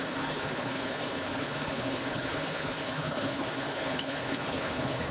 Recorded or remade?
remade